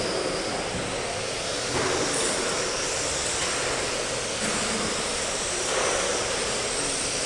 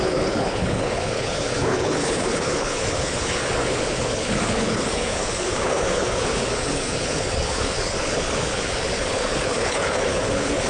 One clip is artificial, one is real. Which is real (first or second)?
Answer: first